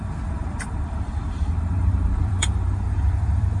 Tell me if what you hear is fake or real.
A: fake